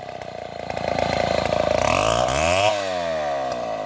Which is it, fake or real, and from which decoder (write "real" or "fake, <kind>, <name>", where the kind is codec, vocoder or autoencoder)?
real